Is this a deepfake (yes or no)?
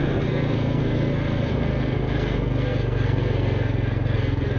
yes